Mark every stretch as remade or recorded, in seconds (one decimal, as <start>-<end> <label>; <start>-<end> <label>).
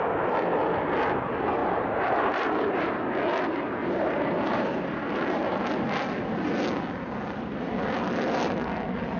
0.0-1.6 recorded; 1.6-3.0 remade; 3.0-3.8 recorded; 3.8-5.7 remade; 5.7-9.2 recorded